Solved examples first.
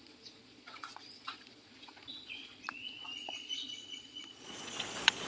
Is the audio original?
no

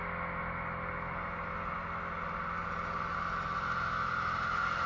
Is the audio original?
yes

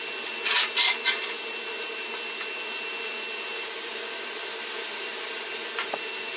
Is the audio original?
yes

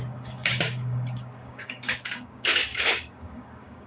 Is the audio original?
no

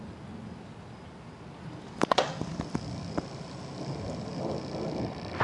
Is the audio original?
yes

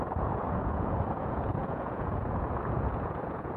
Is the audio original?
no